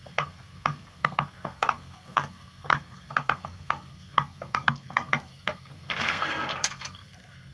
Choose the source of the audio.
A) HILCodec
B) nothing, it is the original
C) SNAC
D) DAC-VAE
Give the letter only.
C